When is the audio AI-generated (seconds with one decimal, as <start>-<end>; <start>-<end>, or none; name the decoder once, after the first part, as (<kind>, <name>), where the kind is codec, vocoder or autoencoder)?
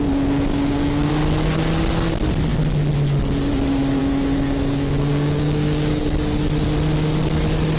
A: 0.5-1.1 (codec, DAC); 4.0-6.1